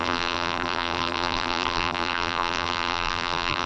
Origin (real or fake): fake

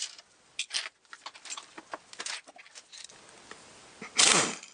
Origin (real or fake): real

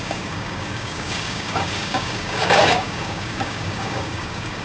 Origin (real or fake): fake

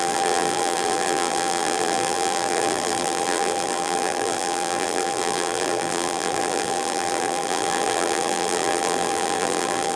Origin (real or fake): fake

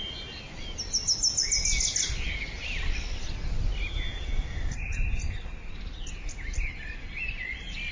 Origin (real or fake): real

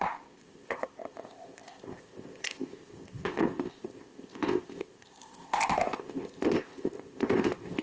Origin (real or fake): fake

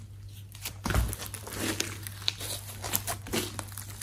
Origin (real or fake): real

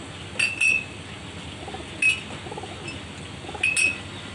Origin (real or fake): real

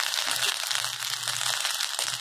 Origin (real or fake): real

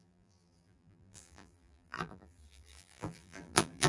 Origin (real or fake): fake